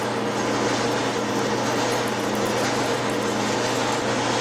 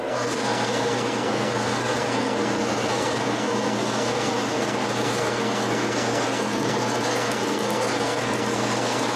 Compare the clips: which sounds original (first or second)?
first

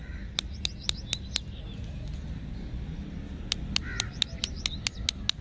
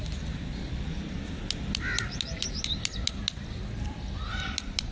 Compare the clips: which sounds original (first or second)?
first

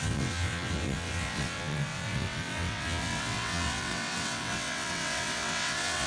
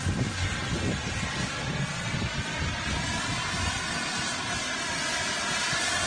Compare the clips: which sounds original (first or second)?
second